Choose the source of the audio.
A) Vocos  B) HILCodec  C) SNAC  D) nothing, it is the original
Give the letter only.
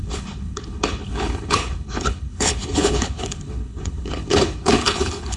B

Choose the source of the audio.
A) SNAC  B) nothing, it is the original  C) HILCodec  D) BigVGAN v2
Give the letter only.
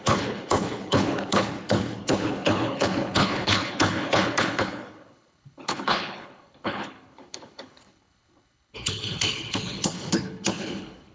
C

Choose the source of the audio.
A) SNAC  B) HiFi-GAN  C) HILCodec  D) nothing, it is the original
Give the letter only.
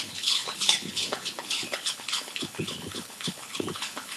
C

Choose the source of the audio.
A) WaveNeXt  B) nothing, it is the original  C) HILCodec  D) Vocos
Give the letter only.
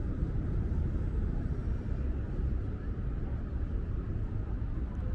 B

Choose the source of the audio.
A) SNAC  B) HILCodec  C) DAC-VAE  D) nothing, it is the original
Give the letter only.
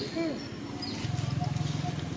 D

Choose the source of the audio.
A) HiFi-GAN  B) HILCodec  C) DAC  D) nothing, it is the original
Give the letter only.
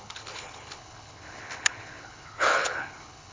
B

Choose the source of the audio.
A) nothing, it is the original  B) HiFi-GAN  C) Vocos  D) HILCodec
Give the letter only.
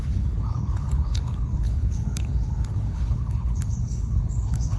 D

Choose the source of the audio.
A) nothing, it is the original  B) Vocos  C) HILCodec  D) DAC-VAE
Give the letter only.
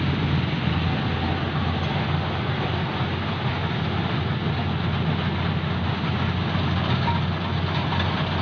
A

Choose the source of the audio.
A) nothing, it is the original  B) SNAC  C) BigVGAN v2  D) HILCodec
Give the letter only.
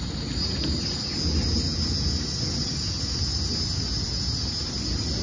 A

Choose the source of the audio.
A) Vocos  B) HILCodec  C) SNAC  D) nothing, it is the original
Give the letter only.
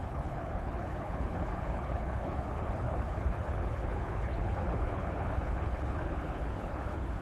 B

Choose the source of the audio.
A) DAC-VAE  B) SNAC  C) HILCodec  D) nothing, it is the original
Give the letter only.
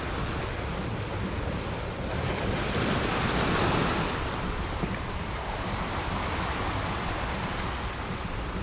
D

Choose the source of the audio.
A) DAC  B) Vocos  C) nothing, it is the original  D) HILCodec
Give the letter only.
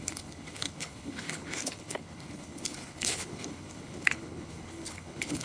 D